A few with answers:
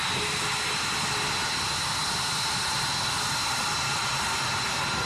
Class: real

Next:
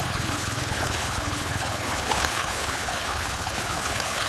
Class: fake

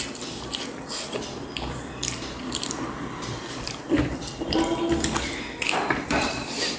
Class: fake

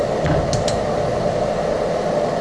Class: real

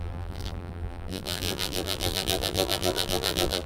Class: fake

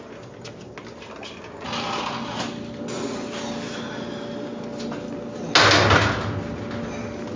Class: real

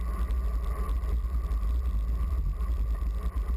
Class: real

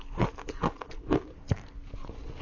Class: real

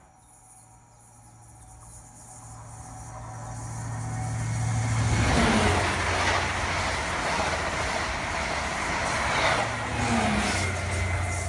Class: real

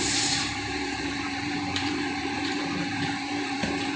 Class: fake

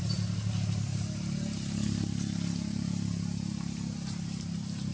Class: real